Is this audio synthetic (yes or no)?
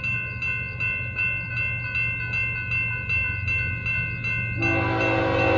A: no